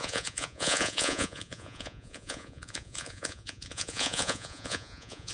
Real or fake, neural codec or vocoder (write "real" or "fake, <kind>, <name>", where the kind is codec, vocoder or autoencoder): fake, vocoder, Vocos